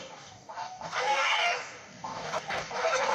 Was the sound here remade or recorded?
remade